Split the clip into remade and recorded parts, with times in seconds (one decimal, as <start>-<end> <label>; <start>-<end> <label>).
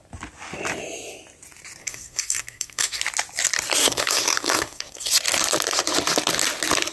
0.0-1.8 recorded; 1.8-3.0 remade; 3.0-3.8 recorded; 3.8-5.1 remade; 5.1-6.9 recorded